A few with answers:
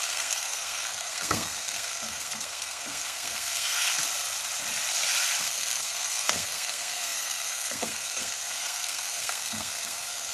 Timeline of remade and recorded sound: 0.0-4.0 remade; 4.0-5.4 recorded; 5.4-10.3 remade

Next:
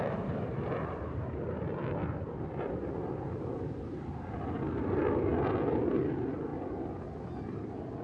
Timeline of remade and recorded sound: 0.0-8.0 recorded

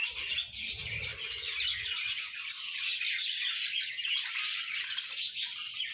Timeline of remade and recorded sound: 0.0-5.9 recorded

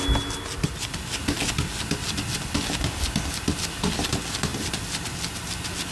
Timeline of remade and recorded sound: 0.0-5.9 recorded

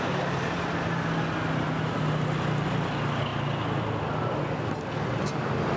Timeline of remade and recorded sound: 0.0-5.8 recorded

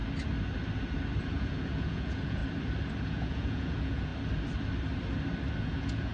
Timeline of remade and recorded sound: 0.0-1.2 recorded; 1.2-2.4 remade; 2.4-3.0 recorded; 3.0-4.1 remade; 4.1-5.6 recorded; 5.6-6.1 remade